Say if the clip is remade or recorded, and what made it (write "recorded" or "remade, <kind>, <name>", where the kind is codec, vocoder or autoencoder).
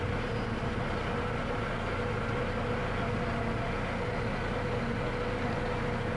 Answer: recorded